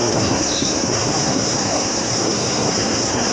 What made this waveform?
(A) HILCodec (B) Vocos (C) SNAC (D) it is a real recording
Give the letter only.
C